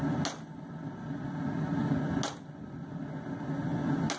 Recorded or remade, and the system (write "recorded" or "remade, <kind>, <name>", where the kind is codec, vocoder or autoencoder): recorded